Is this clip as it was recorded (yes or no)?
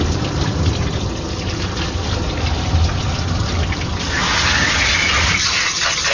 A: yes